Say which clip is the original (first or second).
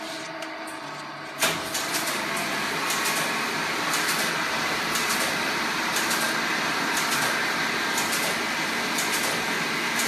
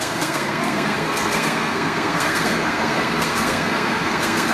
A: first